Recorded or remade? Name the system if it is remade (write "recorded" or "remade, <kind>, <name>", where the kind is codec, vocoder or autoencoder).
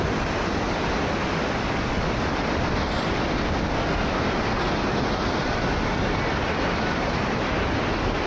recorded